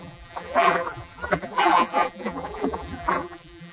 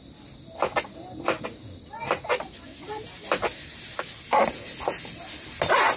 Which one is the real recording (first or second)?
second